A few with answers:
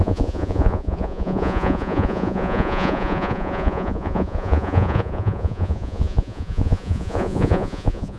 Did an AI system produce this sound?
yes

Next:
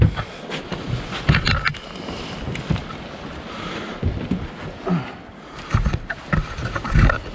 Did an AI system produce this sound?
no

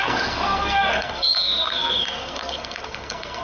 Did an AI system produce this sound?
yes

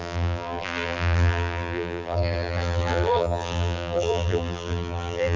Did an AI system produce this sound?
yes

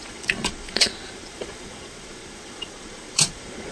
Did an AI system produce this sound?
yes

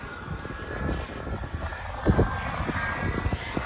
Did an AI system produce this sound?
no